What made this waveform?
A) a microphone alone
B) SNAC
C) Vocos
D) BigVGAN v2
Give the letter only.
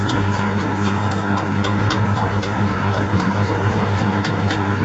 B